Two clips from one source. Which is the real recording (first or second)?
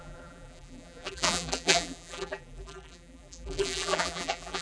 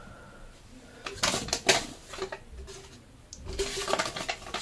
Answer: second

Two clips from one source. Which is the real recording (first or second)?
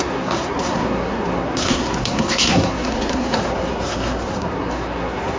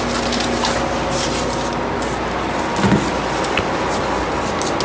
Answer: second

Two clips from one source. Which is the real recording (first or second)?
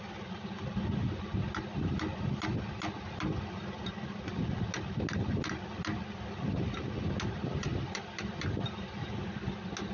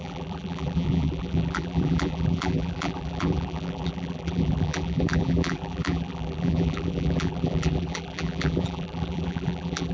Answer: first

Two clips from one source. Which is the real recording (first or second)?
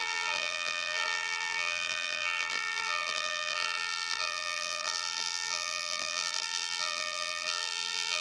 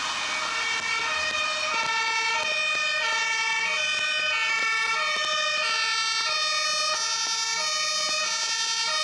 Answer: second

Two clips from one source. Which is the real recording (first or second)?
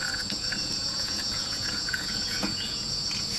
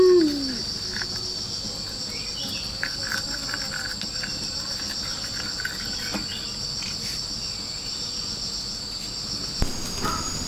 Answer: second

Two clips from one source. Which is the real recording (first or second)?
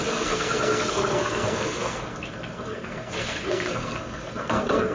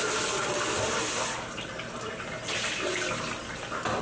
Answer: second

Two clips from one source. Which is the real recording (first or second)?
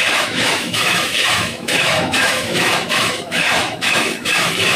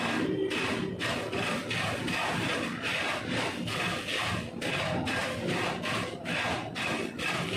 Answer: second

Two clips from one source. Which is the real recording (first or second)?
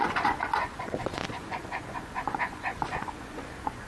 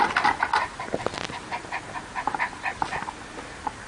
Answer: second